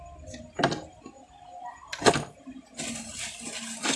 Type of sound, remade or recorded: recorded